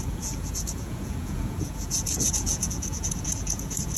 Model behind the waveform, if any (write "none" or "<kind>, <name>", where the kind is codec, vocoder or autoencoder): vocoder, Vocos